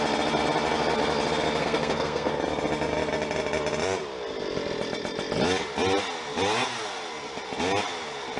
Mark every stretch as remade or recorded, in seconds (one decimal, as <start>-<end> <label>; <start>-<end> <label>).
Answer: 0.0-1.6 recorded; 1.6-2.3 remade; 2.3-8.4 recorded